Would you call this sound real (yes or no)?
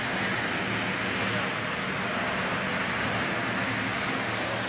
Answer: yes